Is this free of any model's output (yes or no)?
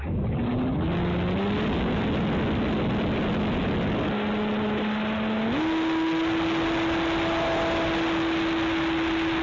yes